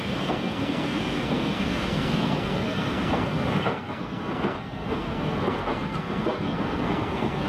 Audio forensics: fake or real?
fake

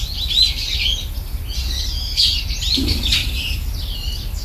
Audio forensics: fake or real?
real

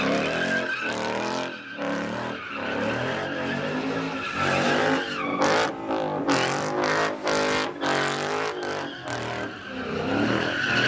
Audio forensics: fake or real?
real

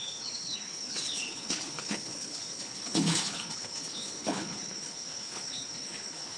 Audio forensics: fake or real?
fake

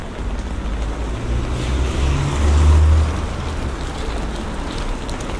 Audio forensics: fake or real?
real